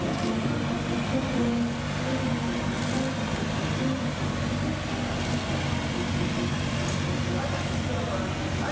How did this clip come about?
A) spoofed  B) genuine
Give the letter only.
B